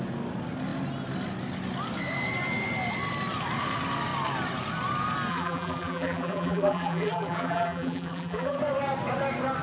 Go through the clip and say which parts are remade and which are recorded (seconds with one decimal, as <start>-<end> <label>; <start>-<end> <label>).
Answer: 0.0-5.3 recorded; 5.3-8.6 remade; 8.6-9.6 recorded